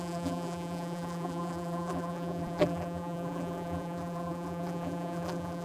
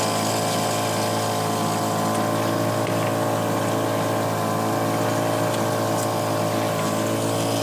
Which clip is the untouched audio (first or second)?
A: second